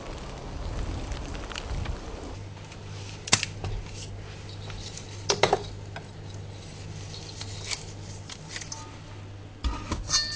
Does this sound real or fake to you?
real